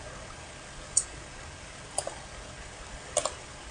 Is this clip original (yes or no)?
yes